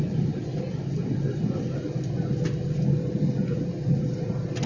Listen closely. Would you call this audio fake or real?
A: real